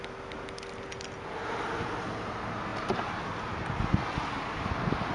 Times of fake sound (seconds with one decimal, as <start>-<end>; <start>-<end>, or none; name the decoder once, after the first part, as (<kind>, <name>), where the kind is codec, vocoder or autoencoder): none